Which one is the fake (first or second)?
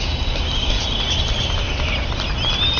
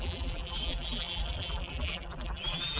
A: second